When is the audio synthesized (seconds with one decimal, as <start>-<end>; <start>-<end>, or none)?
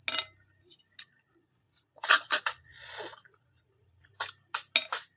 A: 1.1-4.1